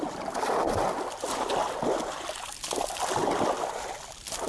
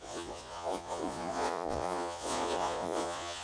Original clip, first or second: first